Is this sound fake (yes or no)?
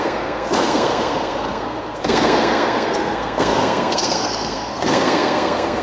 yes